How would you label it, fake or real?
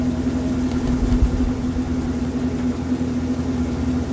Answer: real